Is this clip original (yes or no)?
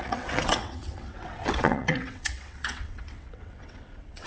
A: no